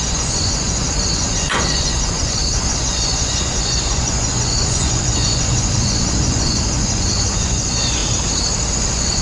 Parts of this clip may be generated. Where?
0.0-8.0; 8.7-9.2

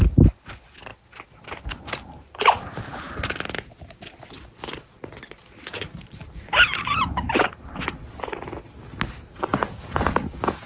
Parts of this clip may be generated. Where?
9.5-10.7

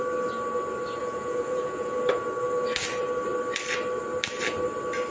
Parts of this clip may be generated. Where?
1.0-2.0

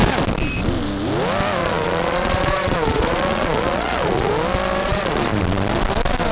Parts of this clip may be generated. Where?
1.6-4.3; 4.8-5.4